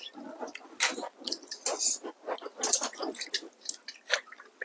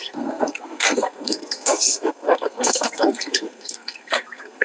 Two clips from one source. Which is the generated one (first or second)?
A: second